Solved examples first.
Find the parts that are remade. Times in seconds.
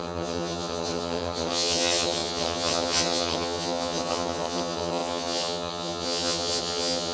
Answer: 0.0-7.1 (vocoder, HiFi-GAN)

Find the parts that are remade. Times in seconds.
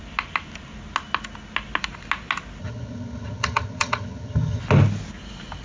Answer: 2.6-4.6 (vocoder, HiFi-GAN)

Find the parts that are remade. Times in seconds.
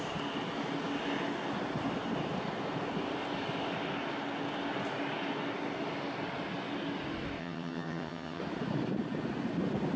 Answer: 7.4-8.4 (vocoder, HiFi-GAN)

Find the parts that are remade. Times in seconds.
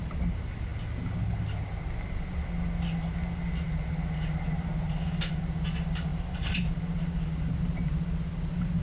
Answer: none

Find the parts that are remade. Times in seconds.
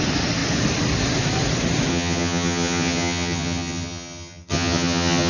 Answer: 1.9-5.3 (vocoder, HiFi-GAN)